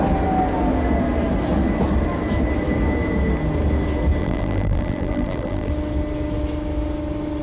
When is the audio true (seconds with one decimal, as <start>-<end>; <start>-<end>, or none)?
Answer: 0.0-4.2; 5.7-7.4